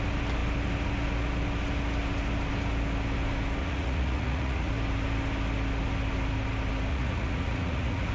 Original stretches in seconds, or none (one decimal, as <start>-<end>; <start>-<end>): 0.0-3.6; 4.7-6.9